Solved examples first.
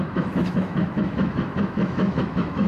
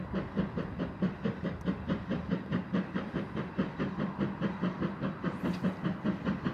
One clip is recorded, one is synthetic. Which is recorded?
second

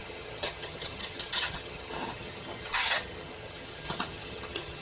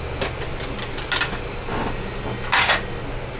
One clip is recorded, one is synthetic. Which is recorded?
second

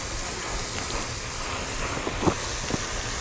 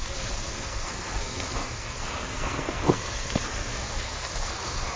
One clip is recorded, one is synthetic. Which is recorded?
first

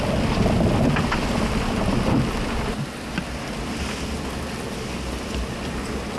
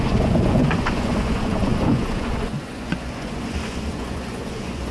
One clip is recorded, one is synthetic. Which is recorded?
first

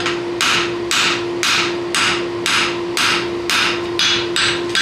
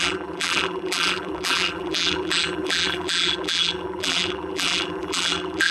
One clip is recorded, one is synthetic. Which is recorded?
first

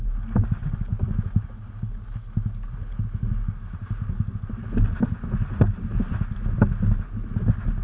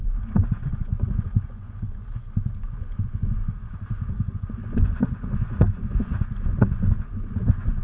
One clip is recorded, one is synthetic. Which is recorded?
first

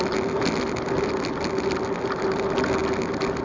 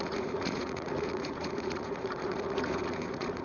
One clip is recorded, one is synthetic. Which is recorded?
first